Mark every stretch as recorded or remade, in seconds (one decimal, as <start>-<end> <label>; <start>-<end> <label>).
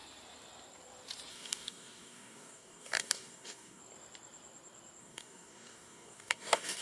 0.0-1.3 recorded; 1.3-3.8 remade; 3.8-5.0 recorded; 5.0-6.8 remade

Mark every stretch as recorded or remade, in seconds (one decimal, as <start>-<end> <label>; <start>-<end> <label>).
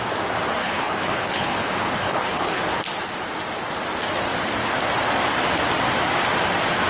0.0-0.6 recorded; 0.6-2.6 remade; 2.6-6.9 recorded